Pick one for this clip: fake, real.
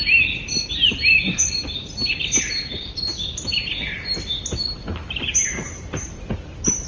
fake